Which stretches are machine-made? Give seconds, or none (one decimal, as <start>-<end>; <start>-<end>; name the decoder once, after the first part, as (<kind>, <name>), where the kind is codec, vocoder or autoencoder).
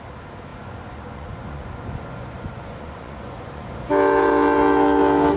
0.5-3.7 (vocoder, Vocos)